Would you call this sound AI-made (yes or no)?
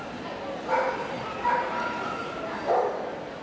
no